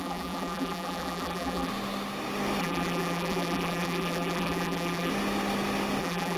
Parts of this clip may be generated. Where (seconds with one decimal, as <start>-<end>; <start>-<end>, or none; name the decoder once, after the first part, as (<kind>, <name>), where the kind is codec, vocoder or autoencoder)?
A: 0.0-1.7 (vocoder, BigVGAN v2); 2.6-5.1; 6.0-6.4